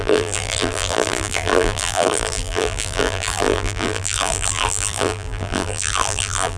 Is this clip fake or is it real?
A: fake